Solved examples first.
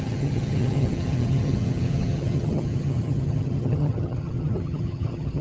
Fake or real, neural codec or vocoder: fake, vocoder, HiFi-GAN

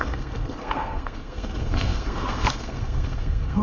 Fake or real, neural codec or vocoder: fake, codec, SNAC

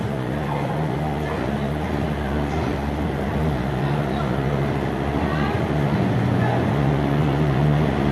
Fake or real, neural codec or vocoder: fake, vocoder, Vocos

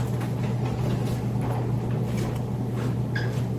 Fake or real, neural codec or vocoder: real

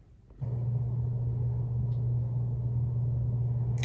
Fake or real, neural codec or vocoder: real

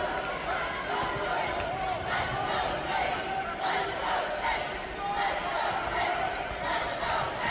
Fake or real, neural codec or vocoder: real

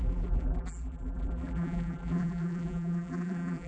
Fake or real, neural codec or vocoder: fake, vocoder, BigVGAN v2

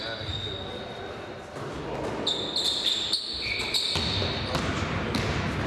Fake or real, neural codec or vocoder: real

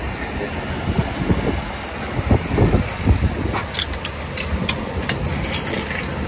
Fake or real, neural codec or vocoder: real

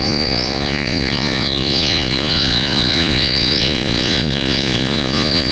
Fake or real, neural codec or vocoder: fake, vocoder, Vocos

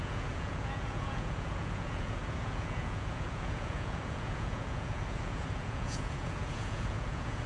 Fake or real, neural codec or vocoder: fake, vocoder, Vocos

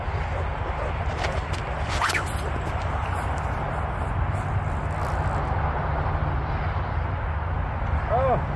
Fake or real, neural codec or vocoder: real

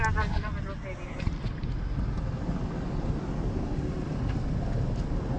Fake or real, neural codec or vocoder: real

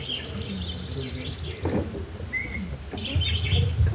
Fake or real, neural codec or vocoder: real